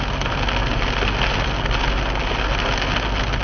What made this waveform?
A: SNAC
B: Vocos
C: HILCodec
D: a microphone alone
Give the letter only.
D